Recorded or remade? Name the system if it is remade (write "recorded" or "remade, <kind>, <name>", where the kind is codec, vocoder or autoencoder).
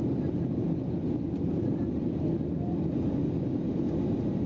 recorded